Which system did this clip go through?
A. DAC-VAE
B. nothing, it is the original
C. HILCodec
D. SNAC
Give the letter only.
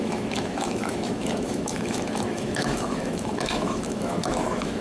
A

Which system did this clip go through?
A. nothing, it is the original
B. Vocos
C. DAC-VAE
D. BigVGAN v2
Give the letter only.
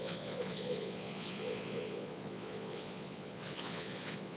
B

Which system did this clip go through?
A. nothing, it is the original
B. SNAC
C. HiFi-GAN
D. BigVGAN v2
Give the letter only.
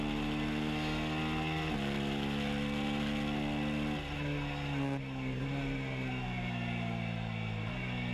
A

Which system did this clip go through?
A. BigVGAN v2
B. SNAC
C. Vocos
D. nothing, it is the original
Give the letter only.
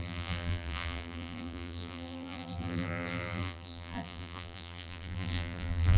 A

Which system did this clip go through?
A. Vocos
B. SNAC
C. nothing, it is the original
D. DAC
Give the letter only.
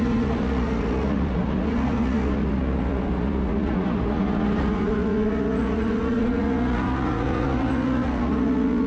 A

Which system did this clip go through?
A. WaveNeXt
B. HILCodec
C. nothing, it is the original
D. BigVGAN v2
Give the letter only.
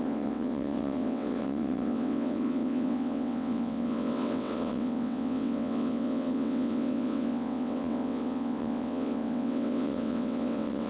A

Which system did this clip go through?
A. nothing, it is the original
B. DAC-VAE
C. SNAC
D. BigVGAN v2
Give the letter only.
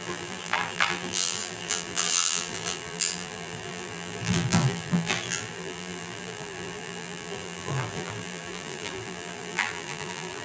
D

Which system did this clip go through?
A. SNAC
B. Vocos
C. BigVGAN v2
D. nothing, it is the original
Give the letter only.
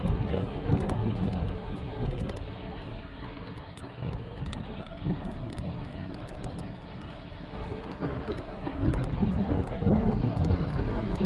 A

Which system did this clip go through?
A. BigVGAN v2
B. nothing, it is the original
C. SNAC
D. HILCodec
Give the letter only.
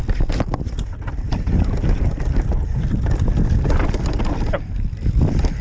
B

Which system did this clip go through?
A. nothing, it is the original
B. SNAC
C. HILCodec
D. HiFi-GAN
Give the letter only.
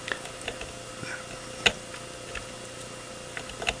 A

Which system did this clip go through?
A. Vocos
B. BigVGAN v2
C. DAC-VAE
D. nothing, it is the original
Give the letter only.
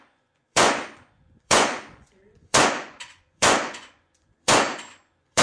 A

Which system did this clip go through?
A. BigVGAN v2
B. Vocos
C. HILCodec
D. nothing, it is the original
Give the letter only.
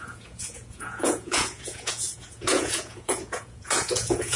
B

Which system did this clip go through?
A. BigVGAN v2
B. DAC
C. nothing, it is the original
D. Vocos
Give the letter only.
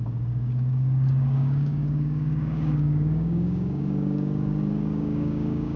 B